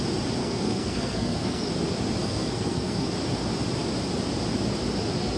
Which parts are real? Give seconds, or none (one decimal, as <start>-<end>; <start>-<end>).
0.0-0.4; 1.7-2.2; 3.1-5.4